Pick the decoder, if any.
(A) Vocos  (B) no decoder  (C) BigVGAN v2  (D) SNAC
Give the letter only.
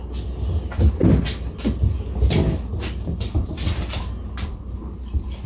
B